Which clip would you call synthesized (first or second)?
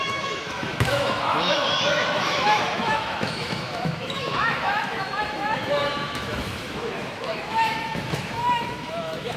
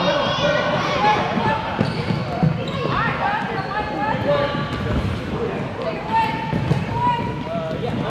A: first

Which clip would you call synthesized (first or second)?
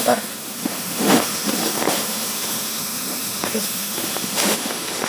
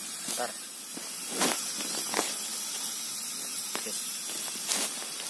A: first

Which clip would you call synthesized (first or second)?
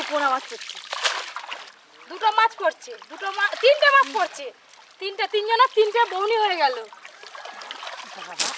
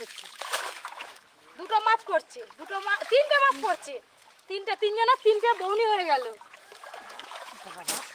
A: second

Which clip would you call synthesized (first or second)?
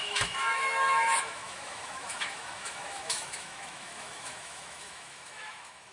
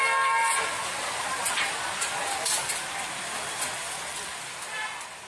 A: first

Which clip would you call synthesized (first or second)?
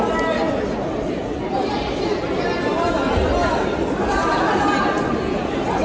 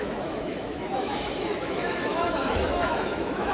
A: second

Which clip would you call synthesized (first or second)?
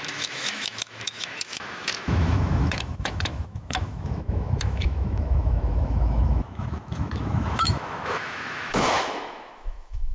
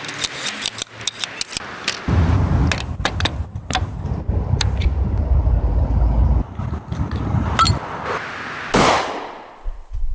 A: first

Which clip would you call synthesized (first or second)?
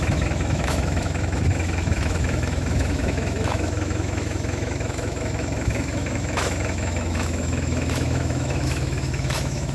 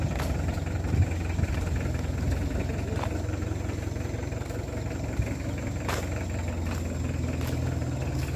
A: first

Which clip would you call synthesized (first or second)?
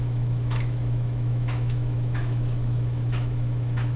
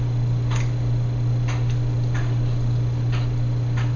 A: first